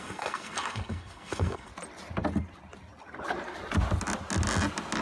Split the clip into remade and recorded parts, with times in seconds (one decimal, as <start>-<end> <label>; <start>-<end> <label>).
0.0-1.7 remade; 1.7-5.0 recorded